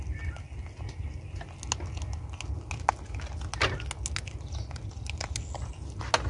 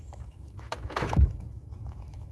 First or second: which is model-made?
second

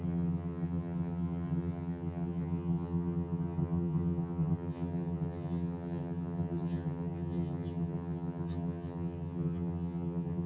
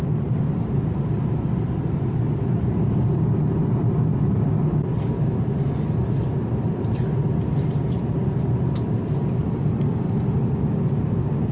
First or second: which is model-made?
first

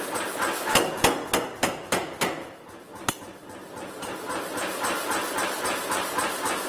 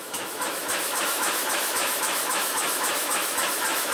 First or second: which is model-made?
second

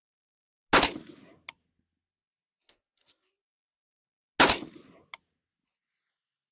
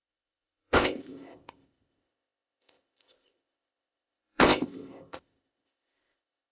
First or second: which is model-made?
second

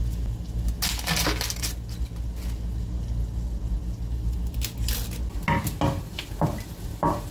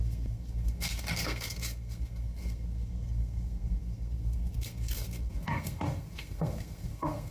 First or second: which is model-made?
second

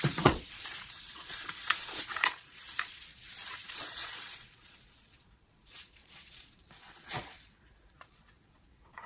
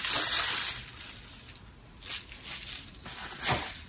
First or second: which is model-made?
first